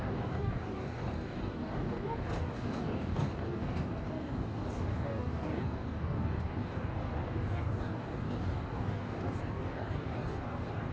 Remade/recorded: remade